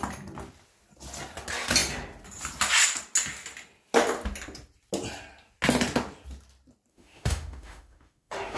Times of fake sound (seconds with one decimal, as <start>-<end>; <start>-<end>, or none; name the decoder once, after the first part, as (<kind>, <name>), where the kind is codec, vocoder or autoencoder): 6.9-8.6 (autoencoder, DAC-VAE)